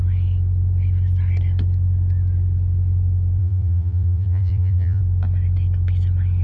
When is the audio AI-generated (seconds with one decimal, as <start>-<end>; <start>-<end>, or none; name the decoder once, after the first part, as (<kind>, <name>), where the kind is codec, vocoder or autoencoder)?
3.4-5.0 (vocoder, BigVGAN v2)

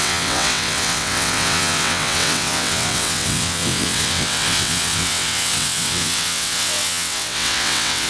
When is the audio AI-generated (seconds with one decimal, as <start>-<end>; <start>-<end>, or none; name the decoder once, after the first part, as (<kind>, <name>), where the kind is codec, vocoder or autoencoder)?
0.0-8.1 (vocoder, WaveNeXt)

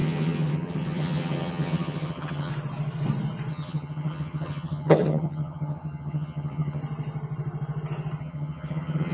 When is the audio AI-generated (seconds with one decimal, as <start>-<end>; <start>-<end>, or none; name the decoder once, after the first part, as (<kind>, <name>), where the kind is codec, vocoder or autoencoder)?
0.0-2.5 (vocoder, HiFi-GAN); 3.5-6.8; 8.2-9.1

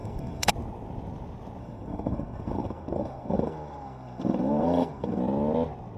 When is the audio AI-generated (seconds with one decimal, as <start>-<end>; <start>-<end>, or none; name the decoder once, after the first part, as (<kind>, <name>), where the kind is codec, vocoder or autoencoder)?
0.0-0.5 (codec, SNAC); 1.6-5.2